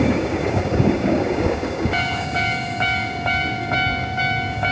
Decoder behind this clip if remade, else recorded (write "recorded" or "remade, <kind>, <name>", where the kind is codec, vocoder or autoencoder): remade, codec, DAC